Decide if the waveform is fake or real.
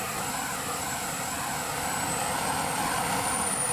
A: fake